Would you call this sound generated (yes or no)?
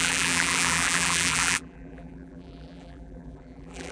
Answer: yes